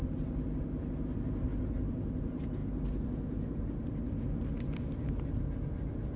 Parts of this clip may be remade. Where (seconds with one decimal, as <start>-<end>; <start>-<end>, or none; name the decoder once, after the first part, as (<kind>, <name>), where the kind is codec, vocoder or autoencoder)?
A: none

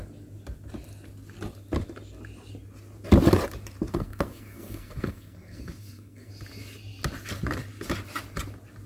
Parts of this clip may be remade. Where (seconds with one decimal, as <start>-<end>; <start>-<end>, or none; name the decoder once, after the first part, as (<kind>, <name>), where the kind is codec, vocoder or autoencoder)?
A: 3.9-6.3 (codec, SNAC)

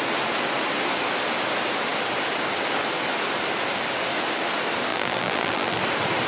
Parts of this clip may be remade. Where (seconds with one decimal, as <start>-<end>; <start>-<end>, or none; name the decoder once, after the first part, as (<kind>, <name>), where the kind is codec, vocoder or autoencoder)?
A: 4.9-5.8 (vocoder, BigVGAN v2)

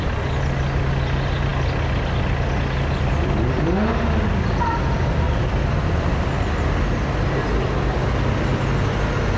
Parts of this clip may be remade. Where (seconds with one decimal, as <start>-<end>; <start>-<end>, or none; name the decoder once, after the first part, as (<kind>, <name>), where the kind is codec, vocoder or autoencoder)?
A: none

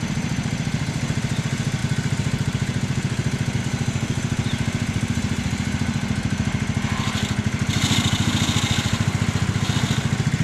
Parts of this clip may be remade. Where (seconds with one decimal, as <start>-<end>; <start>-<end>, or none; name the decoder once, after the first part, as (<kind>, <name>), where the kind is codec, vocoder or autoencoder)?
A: none

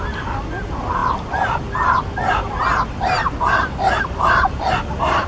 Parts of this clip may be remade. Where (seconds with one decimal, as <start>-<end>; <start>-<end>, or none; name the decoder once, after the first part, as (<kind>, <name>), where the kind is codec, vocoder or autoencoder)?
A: none

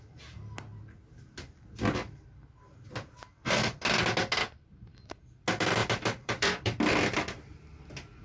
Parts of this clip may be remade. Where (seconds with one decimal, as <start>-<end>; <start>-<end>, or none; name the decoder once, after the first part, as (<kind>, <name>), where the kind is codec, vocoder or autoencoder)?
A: 5.8-7.7 (vocoder, BigVGAN v2)

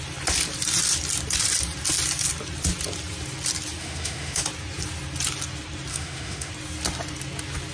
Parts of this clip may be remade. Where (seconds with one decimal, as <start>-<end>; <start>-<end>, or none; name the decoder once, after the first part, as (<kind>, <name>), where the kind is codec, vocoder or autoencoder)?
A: 3.8-4.4 (autoencoder, DAC-VAE); 5.9-6.5